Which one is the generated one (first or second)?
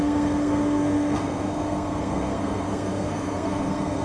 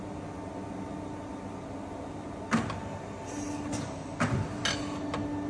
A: first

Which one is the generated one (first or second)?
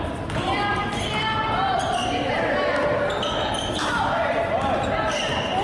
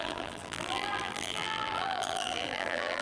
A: second